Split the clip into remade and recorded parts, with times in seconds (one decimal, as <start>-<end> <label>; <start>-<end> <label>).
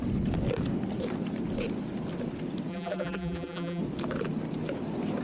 0.0-2.7 recorded; 2.7-3.8 remade; 3.8-5.2 recorded